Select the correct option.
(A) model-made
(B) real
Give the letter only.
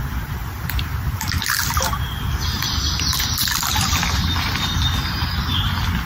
B